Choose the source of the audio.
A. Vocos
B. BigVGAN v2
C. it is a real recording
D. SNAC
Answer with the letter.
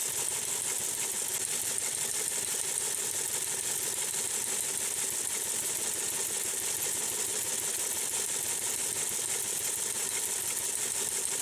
C